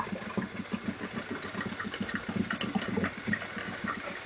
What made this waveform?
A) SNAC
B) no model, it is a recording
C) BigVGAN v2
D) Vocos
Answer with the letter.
B